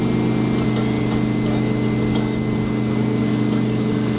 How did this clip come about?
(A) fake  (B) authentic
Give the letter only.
B